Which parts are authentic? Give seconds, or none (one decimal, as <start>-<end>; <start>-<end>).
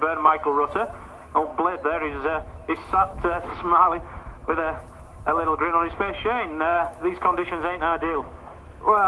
1.5-2.4